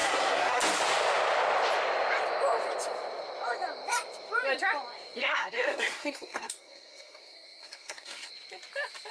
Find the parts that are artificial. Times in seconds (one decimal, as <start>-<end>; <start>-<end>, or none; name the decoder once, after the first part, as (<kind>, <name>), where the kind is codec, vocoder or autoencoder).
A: 0.0-0.6 (codec, SNAC); 5.2-8.3